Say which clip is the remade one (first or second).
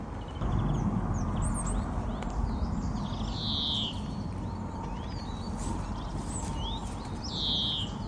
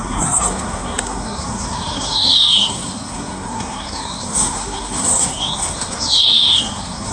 second